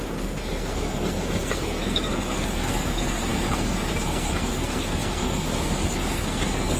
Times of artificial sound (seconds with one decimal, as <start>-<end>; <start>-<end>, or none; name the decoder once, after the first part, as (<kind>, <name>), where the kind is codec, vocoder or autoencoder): 0.0-6.8 (codec, SNAC)